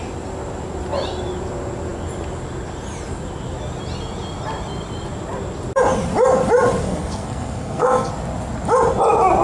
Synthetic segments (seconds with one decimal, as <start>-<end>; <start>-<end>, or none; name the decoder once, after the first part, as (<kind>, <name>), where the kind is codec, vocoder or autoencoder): 6.8-8.1 (codec, SNAC)